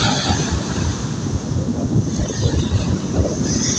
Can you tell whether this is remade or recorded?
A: recorded